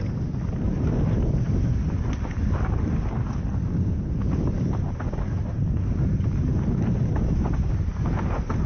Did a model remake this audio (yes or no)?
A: no